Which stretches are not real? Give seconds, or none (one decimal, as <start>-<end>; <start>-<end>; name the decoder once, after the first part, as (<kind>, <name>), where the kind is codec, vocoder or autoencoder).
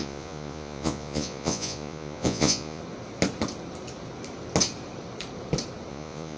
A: 0.0-2.8 (vocoder, Vocos); 5.9-6.4